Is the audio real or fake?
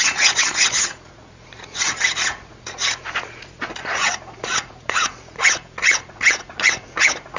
fake